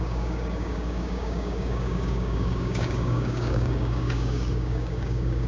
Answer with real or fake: fake